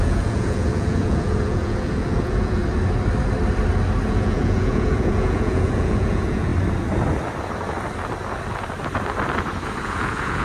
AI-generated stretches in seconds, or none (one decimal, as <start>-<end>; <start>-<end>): 0.0-2.6; 4.1-6.5; 9.8-10.4